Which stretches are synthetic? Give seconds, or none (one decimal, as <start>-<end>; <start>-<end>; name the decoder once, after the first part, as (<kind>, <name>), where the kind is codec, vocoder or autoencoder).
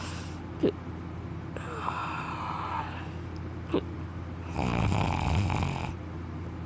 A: none